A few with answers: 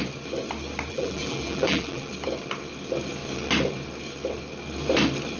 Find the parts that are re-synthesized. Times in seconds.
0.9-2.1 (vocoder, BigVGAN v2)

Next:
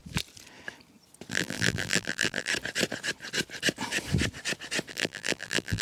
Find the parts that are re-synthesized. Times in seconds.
1.3-2.5 (vocoder, BigVGAN v2); 4.9-5.8

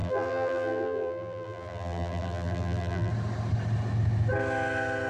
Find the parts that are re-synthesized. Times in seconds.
0.0-3.1 (vocoder, BigVGAN v2)

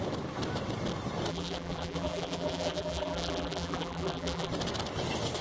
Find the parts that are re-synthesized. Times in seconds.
1.3-4.5 (vocoder, BigVGAN v2)

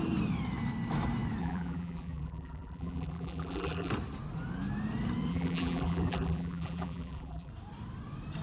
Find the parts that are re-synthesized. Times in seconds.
1.4-3.9 (vocoder, BigVGAN v2); 5.3-7.5

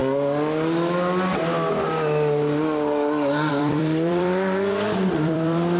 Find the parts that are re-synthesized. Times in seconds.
3.5-5.8 (vocoder, BigVGAN v2)

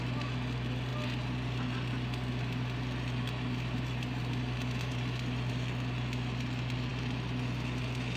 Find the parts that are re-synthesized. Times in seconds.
0.9-5.5 (vocoder, BigVGAN v2); 6.9-8.2